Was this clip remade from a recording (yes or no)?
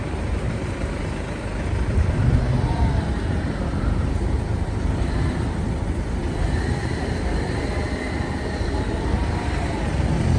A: yes